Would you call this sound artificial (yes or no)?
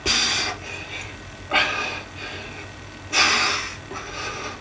no